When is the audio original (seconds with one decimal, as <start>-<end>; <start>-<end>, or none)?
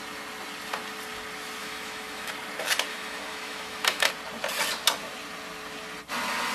0.0-1.6; 2.3-2.9; 4.1-6.5